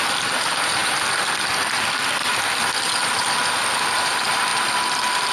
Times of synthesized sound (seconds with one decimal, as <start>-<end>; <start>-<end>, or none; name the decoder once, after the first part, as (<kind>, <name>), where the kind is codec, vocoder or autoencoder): none